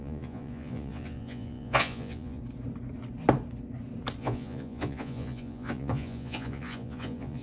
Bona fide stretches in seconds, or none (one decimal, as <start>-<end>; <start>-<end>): 2.4-4.2